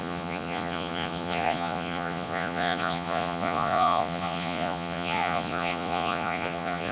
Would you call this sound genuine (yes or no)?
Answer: no